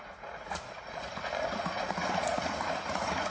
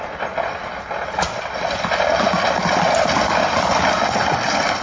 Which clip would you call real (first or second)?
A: second